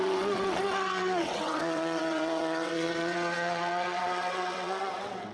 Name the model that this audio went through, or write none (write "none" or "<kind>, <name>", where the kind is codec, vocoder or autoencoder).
vocoder, WaveNeXt